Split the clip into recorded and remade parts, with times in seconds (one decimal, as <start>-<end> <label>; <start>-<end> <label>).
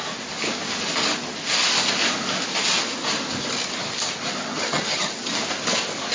0.0-4.5 recorded; 4.5-5.3 remade; 5.3-6.1 recorded